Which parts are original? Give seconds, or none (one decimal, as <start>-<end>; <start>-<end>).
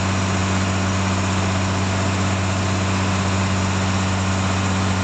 0.0-5.0